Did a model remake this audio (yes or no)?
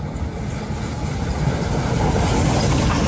no